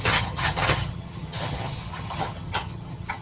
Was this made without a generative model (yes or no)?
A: no